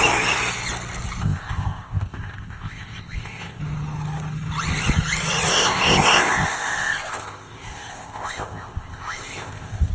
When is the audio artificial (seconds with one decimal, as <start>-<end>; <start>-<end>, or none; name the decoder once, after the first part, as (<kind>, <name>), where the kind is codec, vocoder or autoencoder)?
1.2-3.6 (codec, ZipCodec); 5.5-9.9